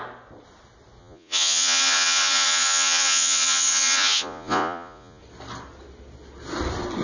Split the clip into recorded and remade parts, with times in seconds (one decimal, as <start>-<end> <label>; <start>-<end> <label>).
0.0-1.0 recorded; 1.0-5.2 remade; 5.2-7.0 recorded